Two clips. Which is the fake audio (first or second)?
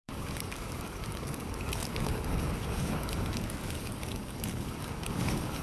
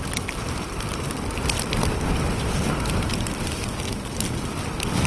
first